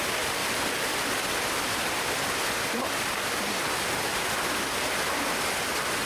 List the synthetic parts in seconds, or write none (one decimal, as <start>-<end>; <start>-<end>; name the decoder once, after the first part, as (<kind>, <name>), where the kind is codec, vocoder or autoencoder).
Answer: 0.4-3.0 (vocoder, BigVGAN v2)